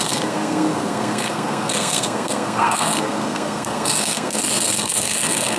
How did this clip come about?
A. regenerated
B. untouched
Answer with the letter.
A